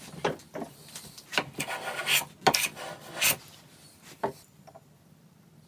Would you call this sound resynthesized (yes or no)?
no